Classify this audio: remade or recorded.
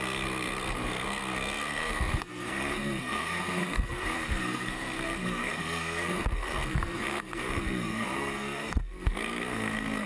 remade